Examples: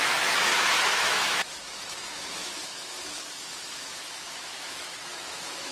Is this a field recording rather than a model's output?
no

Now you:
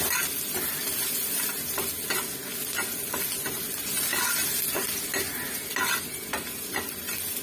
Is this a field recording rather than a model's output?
yes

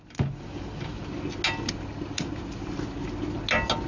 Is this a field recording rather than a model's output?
yes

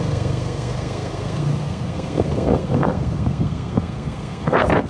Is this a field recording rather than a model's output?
no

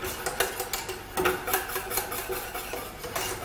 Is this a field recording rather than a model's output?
yes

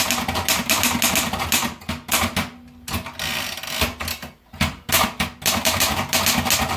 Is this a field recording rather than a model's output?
yes